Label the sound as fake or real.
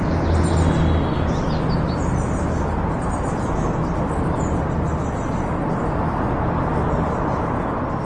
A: real